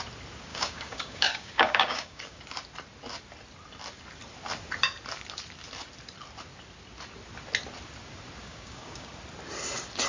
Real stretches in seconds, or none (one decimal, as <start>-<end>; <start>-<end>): 0.0-0.5; 2.4-8.4; 9.1-10.1